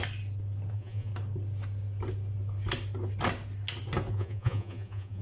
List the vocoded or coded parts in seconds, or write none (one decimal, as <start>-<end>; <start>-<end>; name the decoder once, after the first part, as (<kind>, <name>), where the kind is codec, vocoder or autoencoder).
0.7-1.1 (vocoder, Vocos); 4.1-5.2